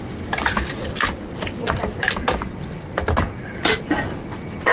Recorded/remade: recorded